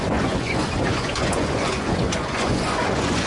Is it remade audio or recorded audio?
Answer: remade